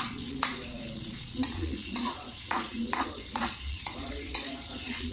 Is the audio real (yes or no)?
no